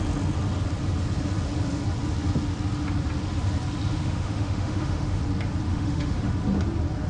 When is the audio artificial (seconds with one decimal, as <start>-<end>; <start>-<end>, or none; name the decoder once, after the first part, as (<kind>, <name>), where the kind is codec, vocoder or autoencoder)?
4.0-5.2 (autoencoder, DAC-VAE); 5.7-6.3